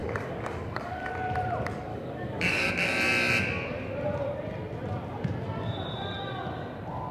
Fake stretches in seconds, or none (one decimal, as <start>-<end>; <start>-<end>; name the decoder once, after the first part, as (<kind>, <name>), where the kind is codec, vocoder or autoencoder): 0.0-1.1 (codec, DAC); 1.9-2.7